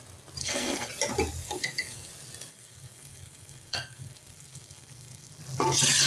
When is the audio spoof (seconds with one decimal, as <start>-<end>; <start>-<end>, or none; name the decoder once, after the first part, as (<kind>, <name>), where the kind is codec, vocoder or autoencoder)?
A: 0.4-0.9 (codec, SNAC); 1.4-2.1; 2.5-5.4